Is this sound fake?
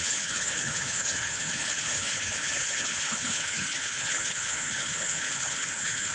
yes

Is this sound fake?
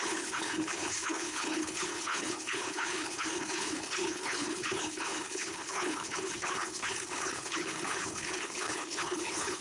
yes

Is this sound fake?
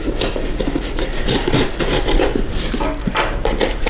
no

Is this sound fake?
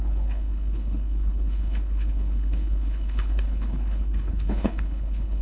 yes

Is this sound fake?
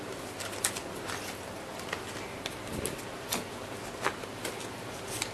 no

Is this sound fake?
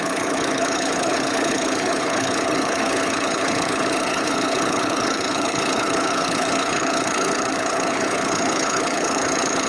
yes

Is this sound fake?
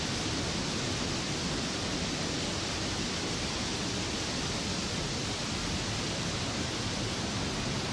no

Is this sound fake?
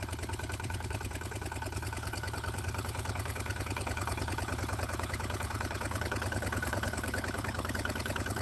yes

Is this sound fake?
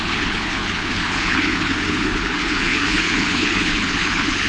yes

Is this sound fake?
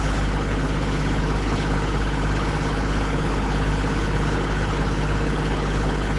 yes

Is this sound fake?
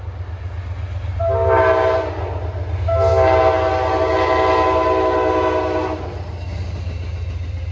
no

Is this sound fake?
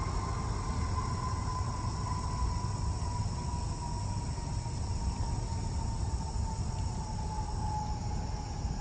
no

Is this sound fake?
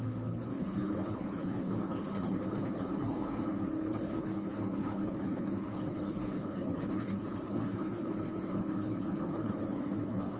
yes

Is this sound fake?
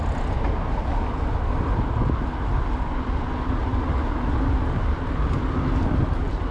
no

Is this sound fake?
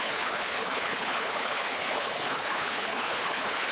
yes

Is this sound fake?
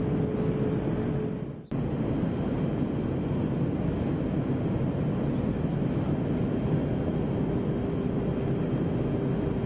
no